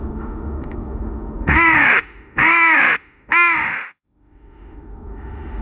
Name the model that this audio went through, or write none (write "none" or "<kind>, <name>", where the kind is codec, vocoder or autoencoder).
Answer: autoencoder, DAC-VAE